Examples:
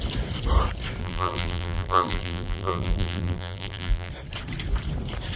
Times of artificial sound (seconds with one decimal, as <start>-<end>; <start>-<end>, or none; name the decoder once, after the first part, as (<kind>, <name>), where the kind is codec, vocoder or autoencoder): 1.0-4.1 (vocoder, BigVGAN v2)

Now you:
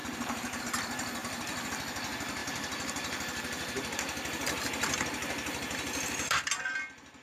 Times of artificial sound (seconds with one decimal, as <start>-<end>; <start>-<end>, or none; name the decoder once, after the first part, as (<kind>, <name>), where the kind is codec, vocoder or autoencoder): 0.0-0.6 (vocoder, BigVGAN v2); 1.2-1.7; 2.4-6.7

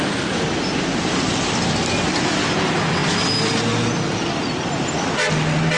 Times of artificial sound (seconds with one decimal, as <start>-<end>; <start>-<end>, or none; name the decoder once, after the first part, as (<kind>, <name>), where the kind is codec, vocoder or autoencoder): none

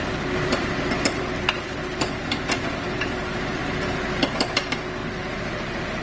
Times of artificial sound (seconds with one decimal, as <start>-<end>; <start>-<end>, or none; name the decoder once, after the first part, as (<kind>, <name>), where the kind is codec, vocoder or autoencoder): 0.0-3.6 (vocoder, BigVGAN v2)